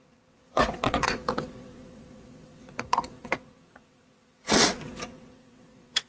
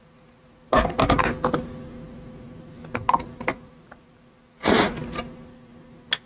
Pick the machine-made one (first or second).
first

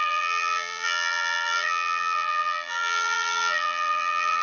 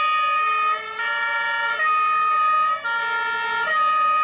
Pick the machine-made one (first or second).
first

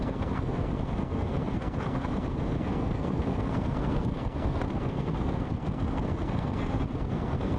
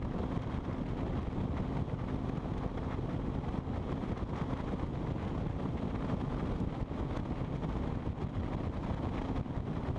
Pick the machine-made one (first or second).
first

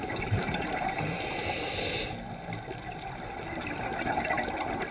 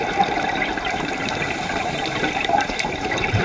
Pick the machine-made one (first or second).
second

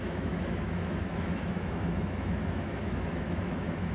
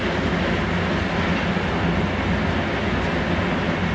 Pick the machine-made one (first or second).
first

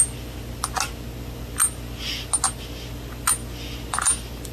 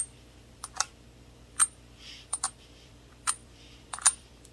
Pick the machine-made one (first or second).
second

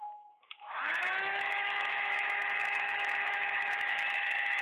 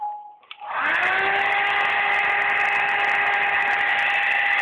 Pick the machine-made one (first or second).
first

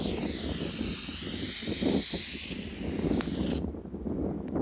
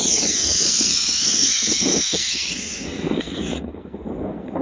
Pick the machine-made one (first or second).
second